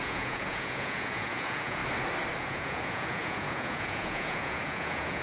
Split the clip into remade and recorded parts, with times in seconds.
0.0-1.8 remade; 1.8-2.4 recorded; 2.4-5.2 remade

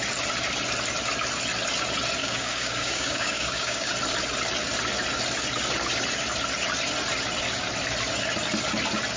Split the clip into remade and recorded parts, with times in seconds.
0.0-2.2 recorded; 2.2-3.9 remade; 3.9-9.2 recorded

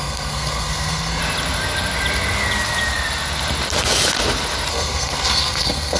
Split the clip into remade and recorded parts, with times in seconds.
0.0-1.2 remade; 1.2-4.7 recorded; 4.7-6.0 remade

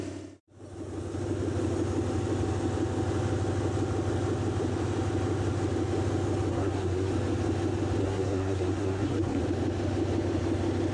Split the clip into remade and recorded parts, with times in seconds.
0.0-6.5 recorded; 6.5-7.1 remade; 7.1-8.0 recorded; 8.0-9.4 remade; 9.4-10.9 recorded

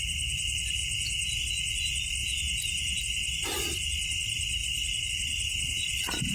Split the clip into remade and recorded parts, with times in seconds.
0.0-0.8 recorded; 0.8-1.4 remade; 1.4-2.2 recorded; 2.2-3.0 remade; 3.0-6.3 recorded

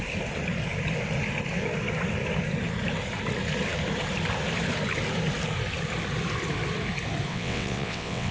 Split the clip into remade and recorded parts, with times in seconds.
0.0-7.3 recorded; 7.3-8.3 remade

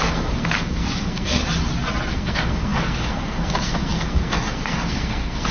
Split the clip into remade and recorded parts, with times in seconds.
0.0-1.4 remade; 1.4-2.1 recorded; 2.1-5.5 remade